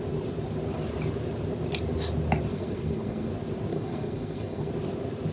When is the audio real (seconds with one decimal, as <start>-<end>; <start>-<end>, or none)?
0.0-2.5; 3.3-3.7; 4.7-5.3